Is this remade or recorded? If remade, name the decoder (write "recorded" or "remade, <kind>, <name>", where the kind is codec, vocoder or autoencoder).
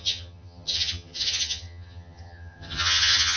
remade, vocoder, HiFi-GAN